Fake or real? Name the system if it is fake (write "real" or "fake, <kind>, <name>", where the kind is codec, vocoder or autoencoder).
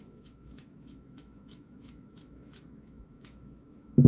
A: fake, autoencoder, DAC-VAE